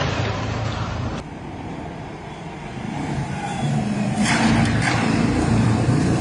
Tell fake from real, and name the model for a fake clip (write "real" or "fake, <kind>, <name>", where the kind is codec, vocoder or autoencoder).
fake, vocoder, BigVGAN v2